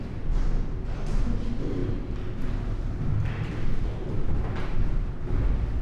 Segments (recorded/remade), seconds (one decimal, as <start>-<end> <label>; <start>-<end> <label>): 0.0-5.8 recorded